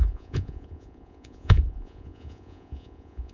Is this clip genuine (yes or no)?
no